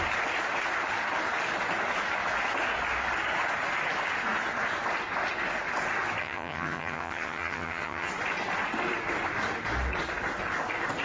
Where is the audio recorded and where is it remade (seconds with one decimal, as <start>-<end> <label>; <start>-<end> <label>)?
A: 0.0-6.2 recorded; 6.2-8.1 remade; 8.1-11.0 recorded